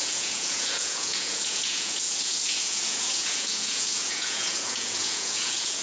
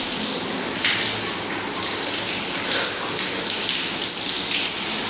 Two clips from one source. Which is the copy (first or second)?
first